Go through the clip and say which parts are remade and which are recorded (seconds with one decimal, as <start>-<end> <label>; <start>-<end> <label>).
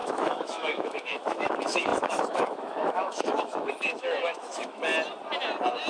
0.0-4.9 remade; 4.9-5.9 recorded